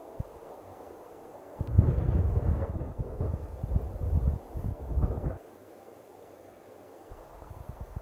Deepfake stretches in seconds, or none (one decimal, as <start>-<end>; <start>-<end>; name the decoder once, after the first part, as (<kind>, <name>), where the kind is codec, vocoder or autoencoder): 0.0-3.6 (codec, SNAC); 4.6-8.0